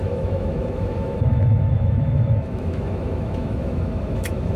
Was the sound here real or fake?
fake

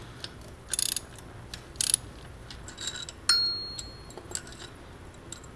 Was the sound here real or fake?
real